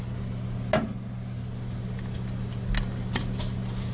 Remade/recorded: recorded